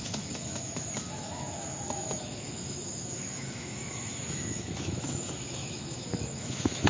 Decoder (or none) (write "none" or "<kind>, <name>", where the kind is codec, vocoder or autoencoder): autoencoder, DAC-VAE